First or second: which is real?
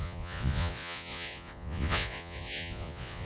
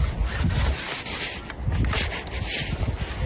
second